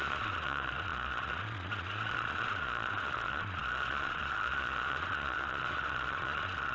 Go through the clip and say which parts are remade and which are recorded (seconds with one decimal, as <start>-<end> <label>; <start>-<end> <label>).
0.0-6.7 remade